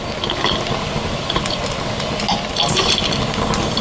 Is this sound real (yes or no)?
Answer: yes